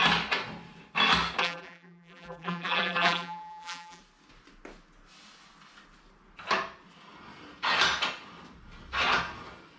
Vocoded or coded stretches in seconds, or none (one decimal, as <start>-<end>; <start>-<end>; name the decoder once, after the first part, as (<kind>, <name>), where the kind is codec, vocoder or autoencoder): 1.4-4.0 (vocoder, BigVGAN v2)